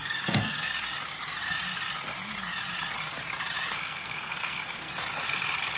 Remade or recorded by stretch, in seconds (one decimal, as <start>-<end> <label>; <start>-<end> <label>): 0.0-0.7 remade; 0.7-3.7 recorded; 3.7-4.9 remade; 4.9-5.8 recorded

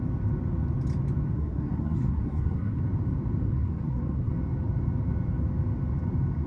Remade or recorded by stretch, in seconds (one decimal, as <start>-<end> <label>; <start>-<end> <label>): 0.0-1.3 recorded; 1.3-2.8 remade; 2.8-3.4 recorded; 3.4-4.3 remade; 4.3-6.5 recorded

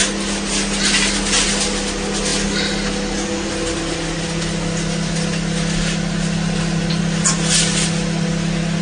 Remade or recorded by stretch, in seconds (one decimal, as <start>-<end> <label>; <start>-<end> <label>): 0.0-8.8 recorded

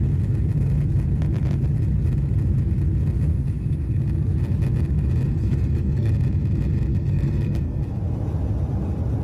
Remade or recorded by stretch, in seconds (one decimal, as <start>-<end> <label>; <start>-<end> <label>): 0.0-3.3 recorded; 3.3-4.0 remade; 4.0-5.4 recorded; 5.4-6.1 remade; 6.1-6.9 recorded; 6.9-7.8 remade; 7.8-9.2 recorded

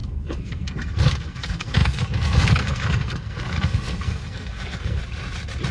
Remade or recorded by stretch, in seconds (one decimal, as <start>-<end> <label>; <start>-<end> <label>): 0.0-5.0 remade; 5.0-5.7 recorded

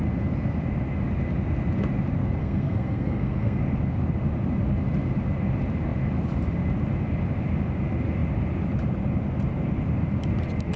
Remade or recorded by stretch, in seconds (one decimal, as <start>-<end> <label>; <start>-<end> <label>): 0.0-2.4 recorded; 2.4-3.6 remade; 3.6-10.8 recorded

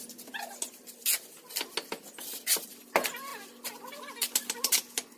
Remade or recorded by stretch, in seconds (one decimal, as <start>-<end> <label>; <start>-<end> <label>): 0.0-5.2 recorded